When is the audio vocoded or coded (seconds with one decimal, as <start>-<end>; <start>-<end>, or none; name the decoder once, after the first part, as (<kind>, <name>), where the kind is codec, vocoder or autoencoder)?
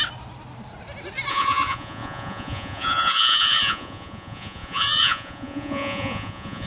1.3-6.7 (vocoder, Vocos)